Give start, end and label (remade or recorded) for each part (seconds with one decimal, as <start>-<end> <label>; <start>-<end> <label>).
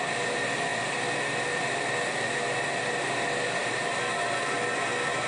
0.0-5.3 recorded